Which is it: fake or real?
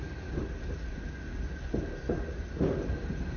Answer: real